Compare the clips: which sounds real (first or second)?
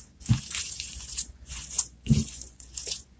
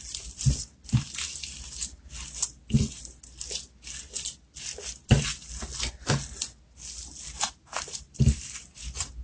second